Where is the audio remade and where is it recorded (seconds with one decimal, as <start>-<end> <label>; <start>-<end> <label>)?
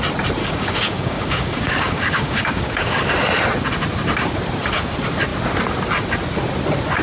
0.0-0.4 recorded; 0.4-3.1 remade; 3.1-7.0 recorded